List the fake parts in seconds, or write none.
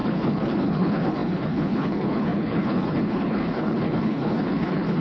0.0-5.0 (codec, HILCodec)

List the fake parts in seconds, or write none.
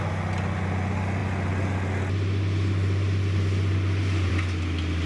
none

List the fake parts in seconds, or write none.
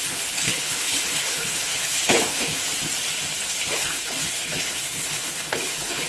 0.0-2.6 (codec, HILCodec); 3.5-6.1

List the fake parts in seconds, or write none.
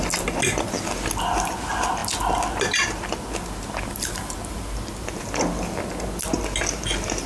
none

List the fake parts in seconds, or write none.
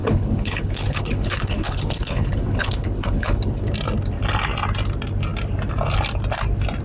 0.0-3.6 (codec, HILCodec)